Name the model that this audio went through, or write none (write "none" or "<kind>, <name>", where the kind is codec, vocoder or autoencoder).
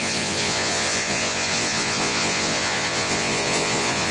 vocoder, Vocos